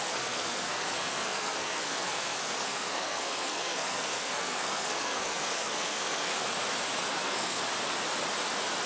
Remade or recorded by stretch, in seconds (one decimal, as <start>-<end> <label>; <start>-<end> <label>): 0.0-6.5 remade; 6.5-7.1 recorded; 7.1-7.6 remade; 7.6-8.9 recorded